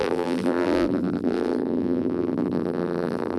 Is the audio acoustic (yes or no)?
no